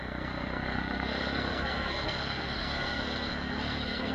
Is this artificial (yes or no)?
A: yes